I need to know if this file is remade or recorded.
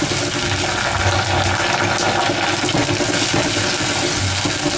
recorded